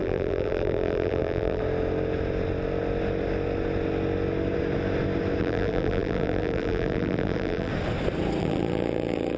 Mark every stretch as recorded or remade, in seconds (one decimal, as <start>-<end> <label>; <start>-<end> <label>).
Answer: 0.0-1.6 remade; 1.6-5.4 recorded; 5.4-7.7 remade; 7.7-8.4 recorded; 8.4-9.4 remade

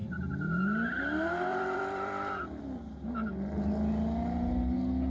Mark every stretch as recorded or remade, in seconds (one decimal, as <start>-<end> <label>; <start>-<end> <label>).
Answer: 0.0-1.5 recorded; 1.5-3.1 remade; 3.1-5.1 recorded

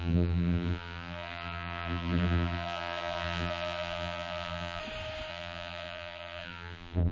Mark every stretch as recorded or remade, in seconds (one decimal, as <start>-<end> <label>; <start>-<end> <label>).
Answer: 0.0-4.8 remade; 4.8-5.3 recorded; 5.3-7.1 remade